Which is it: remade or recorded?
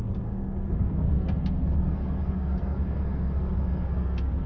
remade